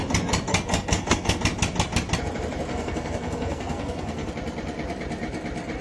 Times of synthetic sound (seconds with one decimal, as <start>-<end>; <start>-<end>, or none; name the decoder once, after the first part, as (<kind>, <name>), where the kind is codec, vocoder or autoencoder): 0.5-1.4 (codec, SNAC); 2.7-4.3